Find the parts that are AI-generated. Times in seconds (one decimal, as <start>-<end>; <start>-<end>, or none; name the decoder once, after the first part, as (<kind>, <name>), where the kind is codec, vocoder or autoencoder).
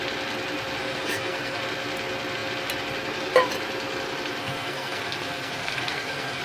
0.8-1.6 (codec, SNAC); 4.4-6.4